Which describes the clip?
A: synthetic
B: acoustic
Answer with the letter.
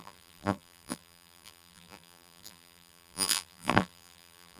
A